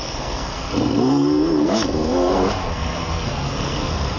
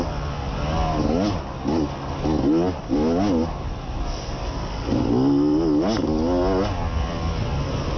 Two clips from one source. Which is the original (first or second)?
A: second